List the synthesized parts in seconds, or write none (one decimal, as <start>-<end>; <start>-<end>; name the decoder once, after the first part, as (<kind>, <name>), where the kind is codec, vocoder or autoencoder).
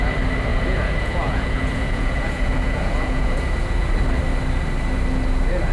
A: 0.5-3.9 (vocoder, Vocos)